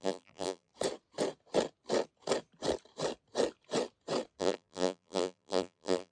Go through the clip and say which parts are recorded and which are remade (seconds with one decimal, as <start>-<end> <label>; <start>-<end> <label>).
0.0-0.7 remade; 0.7-4.4 recorded; 4.4-6.1 remade